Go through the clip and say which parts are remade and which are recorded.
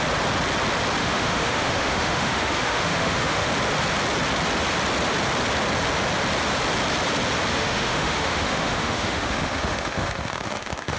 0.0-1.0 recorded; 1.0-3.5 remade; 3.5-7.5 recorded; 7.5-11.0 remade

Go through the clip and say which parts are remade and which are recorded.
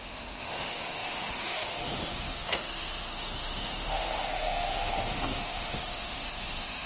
0.0-6.9 remade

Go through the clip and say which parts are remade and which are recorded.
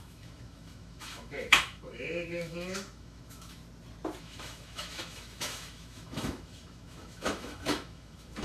0.0-3.6 remade; 3.6-4.2 recorded; 4.2-8.4 remade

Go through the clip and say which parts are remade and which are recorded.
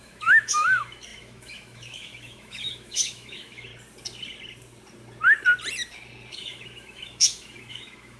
0.0-3.7 remade; 3.7-6.3 recorded; 6.3-8.2 remade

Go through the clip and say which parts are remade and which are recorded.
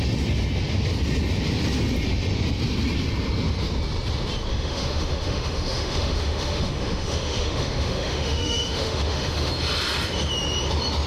0.0-4.5 recorded; 4.5-9.5 remade; 9.5-11.1 recorded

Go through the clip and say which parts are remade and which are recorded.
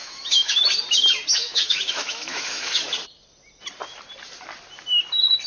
0.0-0.6 remade; 0.6-1.4 recorded; 1.4-2.9 remade; 2.9-5.5 recorded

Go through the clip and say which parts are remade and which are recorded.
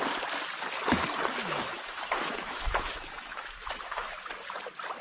0.0-1.4 recorded; 1.4-4.3 remade; 4.3-5.0 recorded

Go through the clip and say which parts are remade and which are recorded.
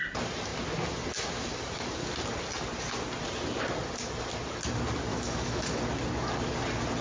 0.0-5.1 recorded; 5.1-5.8 remade; 5.8-7.0 recorded